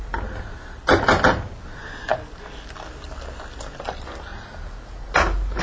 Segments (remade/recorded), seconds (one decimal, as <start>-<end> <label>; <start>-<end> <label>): 0.0-5.6 recorded